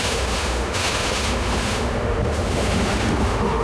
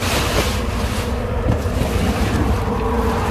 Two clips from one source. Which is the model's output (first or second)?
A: first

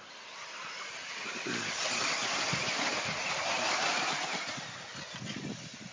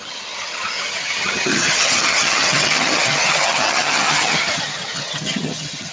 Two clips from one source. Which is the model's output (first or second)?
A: second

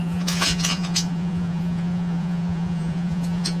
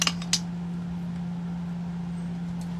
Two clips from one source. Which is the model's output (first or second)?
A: first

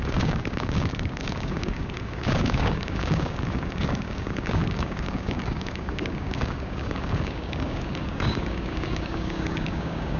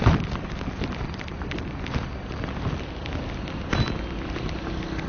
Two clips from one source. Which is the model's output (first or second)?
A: first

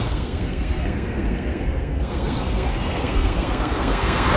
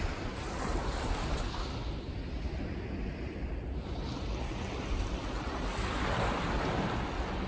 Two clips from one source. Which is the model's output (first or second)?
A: first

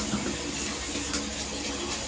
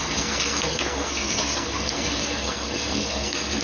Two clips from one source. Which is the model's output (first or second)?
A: second